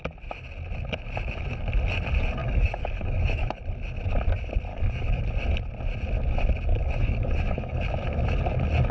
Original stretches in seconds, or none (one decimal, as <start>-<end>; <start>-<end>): 0.0-2.4; 3.6-4.7; 5.2-6.7; 7.8-8.9